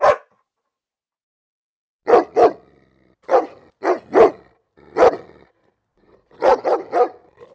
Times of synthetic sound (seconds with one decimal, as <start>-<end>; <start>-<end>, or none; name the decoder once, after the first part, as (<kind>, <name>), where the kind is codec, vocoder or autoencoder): 5.9-6.6 (vocoder, Vocos)

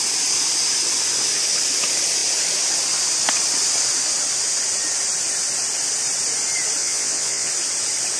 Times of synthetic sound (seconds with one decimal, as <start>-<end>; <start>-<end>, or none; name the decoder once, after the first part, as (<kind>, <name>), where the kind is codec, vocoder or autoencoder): 6.8-7.5 (vocoder, Vocos)

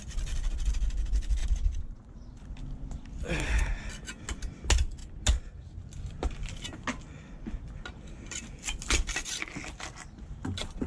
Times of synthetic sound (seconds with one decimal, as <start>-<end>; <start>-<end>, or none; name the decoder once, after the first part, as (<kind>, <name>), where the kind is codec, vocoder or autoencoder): 1.4-2.0 (vocoder, Vocos)

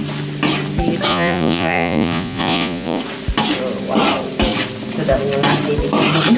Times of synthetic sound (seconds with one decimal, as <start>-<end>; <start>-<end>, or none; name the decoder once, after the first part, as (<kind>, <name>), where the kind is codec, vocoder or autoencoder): 1.1-3.0 (vocoder, Vocos)

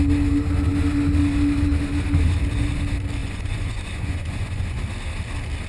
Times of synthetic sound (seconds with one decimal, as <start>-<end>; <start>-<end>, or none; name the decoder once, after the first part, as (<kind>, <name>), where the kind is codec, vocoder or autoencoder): 3.2-4.8 (vocoder, Vocos)

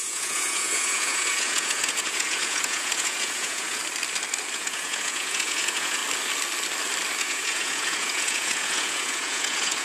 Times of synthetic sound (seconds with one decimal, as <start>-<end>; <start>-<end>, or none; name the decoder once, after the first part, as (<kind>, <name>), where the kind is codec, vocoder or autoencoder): 0.0-3.8 (vocoder, Vocos); 4.5-6.0; 7.2-9.8